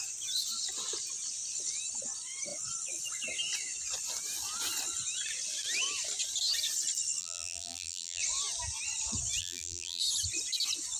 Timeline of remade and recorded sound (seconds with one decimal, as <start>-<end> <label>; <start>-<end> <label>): 0.0-7.2 recorded; 7.2-8.2 remade; 8.2-9.4 recorded; 9.4-10.0 remade; 10.0-11.0 recorded